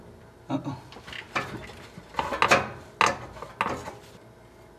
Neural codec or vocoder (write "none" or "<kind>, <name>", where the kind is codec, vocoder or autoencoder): none